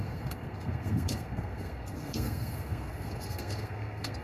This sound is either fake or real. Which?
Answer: fake